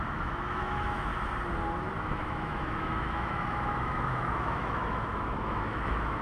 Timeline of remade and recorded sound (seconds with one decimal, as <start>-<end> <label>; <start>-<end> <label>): 0.0-1.1 remade; 1.1-2.0 recorded; 2.0-6.2 remade